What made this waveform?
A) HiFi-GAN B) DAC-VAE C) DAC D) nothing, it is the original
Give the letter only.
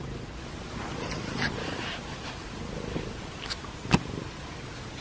D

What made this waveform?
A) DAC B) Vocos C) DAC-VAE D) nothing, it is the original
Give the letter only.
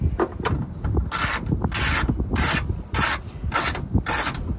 D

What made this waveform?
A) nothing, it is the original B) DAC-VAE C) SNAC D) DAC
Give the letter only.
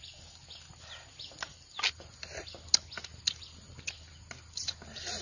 A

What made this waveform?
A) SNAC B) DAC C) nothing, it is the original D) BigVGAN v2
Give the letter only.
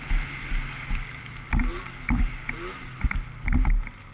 C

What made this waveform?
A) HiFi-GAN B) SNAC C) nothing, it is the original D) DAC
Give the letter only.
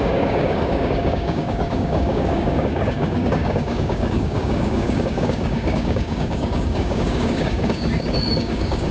D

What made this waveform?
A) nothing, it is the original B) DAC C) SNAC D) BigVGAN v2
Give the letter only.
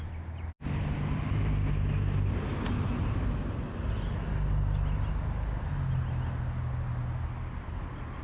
A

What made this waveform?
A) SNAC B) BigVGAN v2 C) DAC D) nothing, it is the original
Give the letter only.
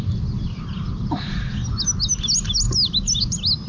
D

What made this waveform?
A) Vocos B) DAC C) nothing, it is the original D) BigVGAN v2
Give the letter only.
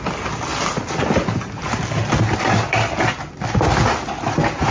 C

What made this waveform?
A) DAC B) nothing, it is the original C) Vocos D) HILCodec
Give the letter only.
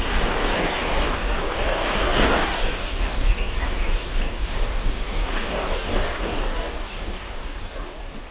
A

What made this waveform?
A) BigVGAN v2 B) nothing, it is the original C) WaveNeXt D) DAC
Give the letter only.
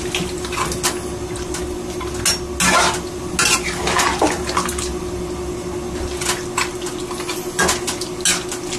B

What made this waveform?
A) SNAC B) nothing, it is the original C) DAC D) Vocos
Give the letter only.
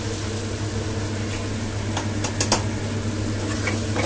B